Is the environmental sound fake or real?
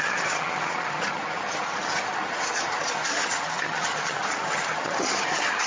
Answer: fake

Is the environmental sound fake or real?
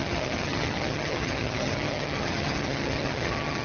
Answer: fake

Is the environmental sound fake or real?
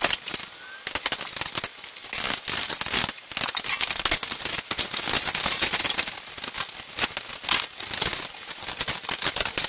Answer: real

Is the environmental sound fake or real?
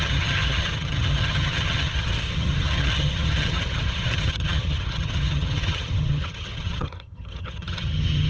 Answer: fake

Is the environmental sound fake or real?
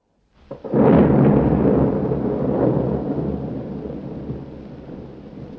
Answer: real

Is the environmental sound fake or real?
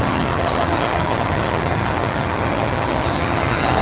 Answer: fake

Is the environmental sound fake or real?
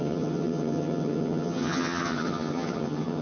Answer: fake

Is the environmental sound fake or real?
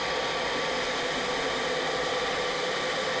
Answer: real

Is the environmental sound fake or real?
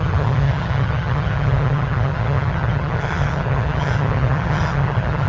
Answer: fake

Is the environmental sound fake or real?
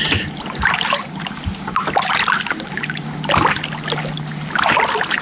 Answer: real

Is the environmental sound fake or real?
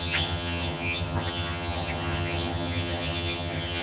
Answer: fake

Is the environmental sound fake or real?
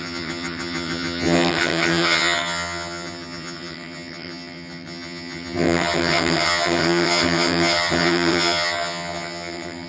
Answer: fake